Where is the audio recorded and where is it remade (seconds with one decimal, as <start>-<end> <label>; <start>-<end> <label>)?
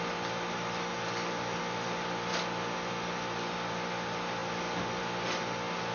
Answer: 0.0-5.9 recorded